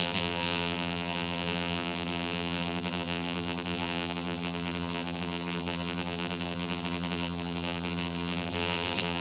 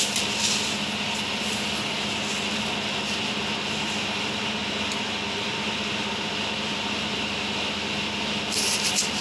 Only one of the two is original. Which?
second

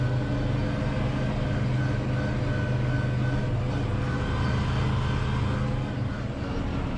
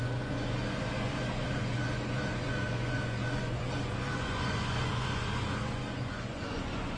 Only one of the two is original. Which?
first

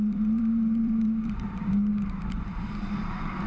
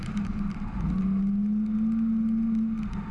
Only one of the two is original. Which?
second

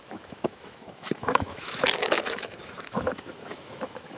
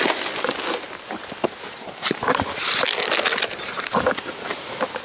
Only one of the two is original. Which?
second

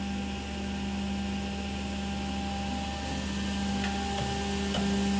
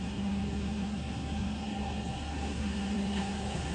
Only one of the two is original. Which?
first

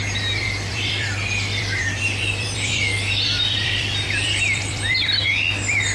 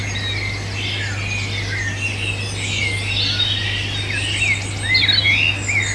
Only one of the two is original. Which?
second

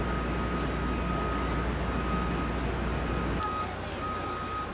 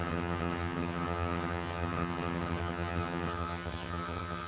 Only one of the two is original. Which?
first